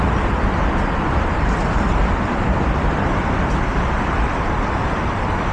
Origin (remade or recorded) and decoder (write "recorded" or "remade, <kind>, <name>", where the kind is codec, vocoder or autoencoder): remade, vocoder, BigVGAN v2